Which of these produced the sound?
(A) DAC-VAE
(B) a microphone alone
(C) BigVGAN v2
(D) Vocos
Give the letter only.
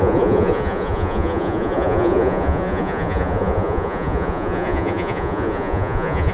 D